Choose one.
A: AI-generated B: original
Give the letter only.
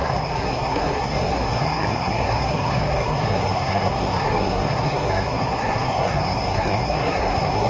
A